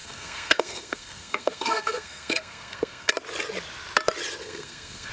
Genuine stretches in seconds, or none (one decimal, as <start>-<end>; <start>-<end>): 3.1-4.4